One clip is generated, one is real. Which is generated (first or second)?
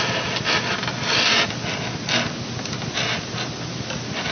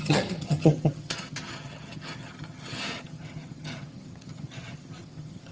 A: second